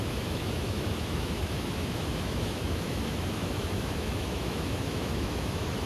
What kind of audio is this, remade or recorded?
remade